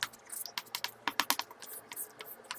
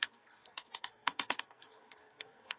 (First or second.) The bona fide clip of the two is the first